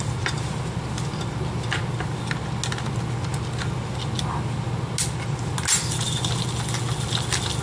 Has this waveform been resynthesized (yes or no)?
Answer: no